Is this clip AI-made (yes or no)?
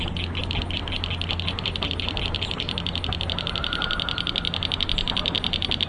no